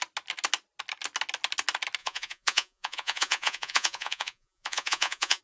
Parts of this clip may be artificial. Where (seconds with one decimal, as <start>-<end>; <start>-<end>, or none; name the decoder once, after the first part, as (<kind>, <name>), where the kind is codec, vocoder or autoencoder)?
2.0-5.4 (vocoder, Vocos)